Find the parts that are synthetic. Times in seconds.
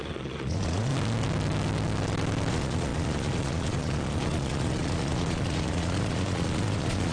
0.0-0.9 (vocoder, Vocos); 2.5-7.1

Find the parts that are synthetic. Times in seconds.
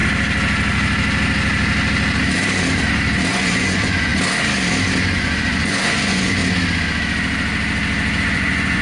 3.3-4.1 (vocoder, Vocos); 5.0-6.4; 8.2-8.8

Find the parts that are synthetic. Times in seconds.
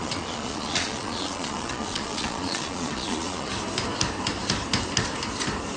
0.0-3.5 (vocoder, Vocos)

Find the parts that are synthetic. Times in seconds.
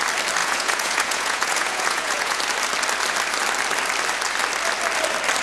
0.4-2.4 (vocoder, Vocos)